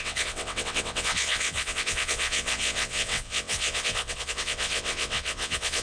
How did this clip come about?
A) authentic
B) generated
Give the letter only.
B